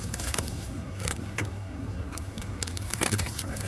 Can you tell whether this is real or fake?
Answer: fake